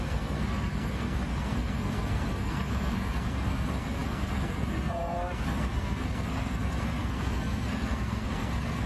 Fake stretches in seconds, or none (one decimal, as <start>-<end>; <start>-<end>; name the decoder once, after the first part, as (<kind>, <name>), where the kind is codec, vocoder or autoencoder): 0.0-8.9 (codec, SNAC)